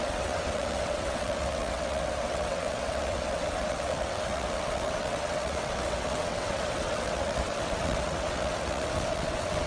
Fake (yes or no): yes